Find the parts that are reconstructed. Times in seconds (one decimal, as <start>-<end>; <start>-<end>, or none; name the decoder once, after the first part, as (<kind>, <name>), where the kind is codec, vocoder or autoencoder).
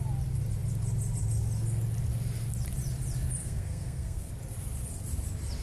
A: 3.4-4.3 (codec, SNAC)